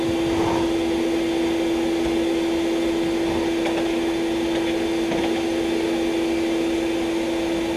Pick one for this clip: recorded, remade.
recorded